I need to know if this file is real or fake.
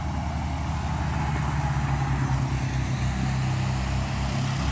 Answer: real